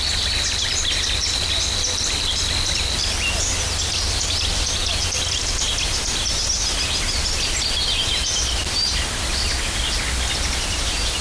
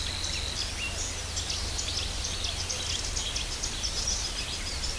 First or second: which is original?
second